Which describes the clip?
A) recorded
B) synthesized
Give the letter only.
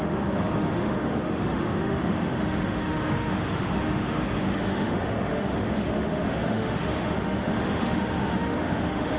B